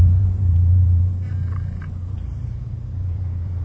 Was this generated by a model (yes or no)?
yes